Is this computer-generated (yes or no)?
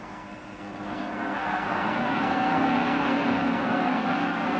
yes